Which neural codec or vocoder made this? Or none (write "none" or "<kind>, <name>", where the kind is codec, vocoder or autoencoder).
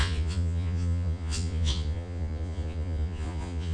vocoder, Vocos